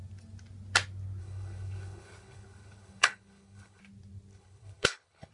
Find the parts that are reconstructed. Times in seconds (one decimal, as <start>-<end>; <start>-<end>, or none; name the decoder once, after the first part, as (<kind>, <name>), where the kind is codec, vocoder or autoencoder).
1.2-3.8 (codec, HILCodec); 4.3-5.3